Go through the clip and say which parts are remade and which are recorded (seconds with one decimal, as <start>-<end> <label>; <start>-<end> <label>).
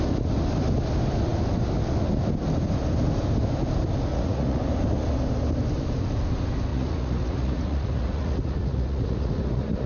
0.0-4.1 recorded; 4.1-4.6 remade; 4.6-6.7 recorded; 6.7-9.9 remade